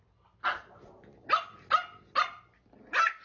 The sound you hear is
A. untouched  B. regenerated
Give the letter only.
A